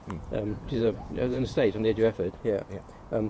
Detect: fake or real fake